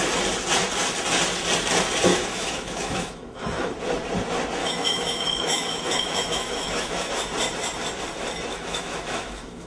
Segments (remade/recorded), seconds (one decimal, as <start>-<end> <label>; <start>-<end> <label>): 0.0-2.1 recorded; 2.1-3.7 remade; 3.7-4.6 recorded; 4.6-7.1 remade; 7.1-8.5 recorded; 8.5-9.7 remade